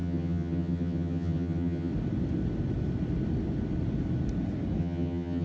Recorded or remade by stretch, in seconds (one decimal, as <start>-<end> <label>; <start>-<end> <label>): 0.0-1.9 remade; 1.9-4.8 recorded; 4.8-5.4 remade